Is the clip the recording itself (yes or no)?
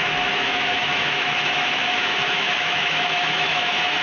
no